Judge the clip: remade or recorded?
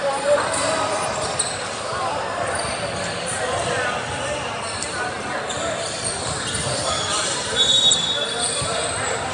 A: recorded